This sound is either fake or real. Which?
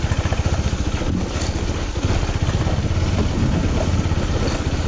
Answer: real